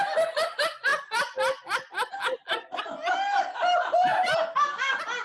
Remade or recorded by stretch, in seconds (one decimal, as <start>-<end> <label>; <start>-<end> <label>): 0.0-5.2 recorded

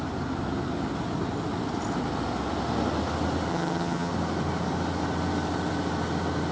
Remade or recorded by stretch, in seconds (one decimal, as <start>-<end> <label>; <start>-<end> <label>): 0.0-3.5 recorded; 3.5-4.1 remade; 4.1-6.5 recorded

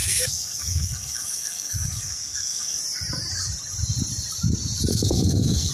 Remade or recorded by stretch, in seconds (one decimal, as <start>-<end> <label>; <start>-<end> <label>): 0.0-2.8 remade; 2.8-4.9 recorded; 4.9-5.7 remade

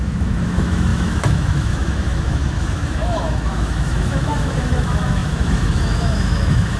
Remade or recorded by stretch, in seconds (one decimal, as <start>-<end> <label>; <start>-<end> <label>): 0.0-6.8 remade

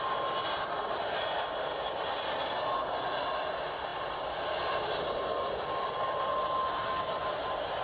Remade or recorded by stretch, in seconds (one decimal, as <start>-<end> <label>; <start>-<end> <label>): 0.0-3.9 recorded; 3.9-6.3 remade; 6.3-7.8 recorded